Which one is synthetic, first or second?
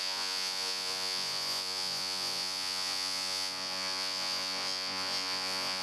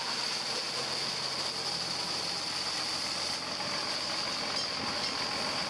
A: first